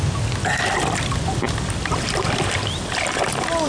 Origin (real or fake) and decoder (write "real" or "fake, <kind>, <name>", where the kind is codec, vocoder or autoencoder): real